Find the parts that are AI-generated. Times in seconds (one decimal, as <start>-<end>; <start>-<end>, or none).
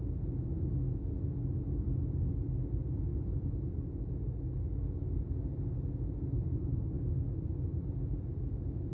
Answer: none